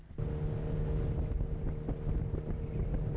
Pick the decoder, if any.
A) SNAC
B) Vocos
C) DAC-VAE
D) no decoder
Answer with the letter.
D